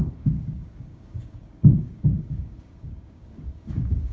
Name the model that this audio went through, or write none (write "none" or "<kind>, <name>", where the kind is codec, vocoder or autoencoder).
codec, DAC